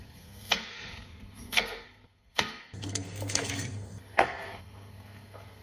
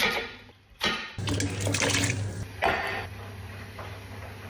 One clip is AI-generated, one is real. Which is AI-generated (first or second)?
first